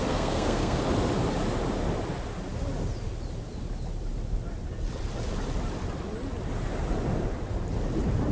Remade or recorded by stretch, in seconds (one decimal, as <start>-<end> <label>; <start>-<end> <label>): 0.0-0.8 remade; 0.8-8.3 recorded

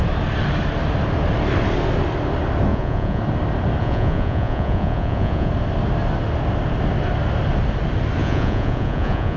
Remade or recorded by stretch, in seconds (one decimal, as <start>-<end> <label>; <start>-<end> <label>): 0.0-2.7 recorded; 2.7-3.2 remade; 3.2-3.8 recorded; 3.8-5.5 remade; 5.5-8.2 recorded; 8.2-9.4 remade

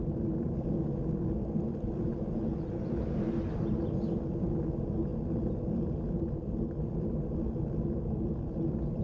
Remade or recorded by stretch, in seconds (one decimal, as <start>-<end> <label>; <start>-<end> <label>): 0.0-9.0 recorded

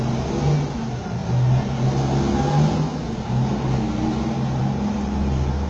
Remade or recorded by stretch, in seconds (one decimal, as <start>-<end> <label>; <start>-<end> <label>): 0.0-5.7 recorded

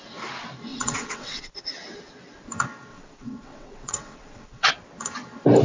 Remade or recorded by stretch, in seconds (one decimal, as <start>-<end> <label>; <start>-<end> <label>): 0.0-0.7 recorded; 0.7-1.5 remade; 1.5-2.9 recorded; 2.9-4.7 remade; 4.7-5.6 recorded

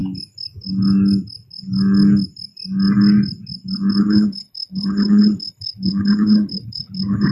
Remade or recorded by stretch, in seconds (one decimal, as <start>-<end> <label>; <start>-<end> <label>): 0.0-4.0 recorded; 4.0-7.3 remade

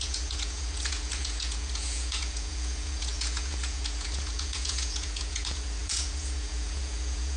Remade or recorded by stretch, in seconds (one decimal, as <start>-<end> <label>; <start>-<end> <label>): 0.0-7.4 remade